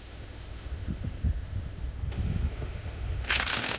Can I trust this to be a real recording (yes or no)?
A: no